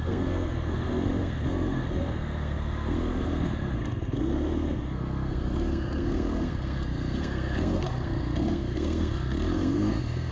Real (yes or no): no